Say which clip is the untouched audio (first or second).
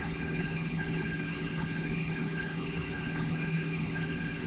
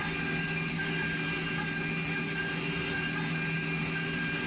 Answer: second